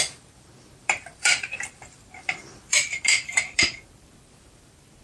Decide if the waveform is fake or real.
fake